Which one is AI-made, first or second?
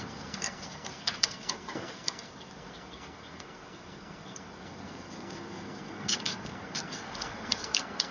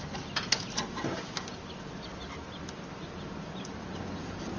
first